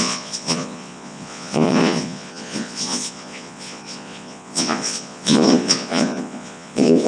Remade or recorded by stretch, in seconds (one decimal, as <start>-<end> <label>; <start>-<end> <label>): 0.0-7.1 remade